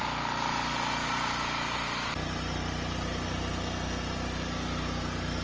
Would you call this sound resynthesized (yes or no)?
no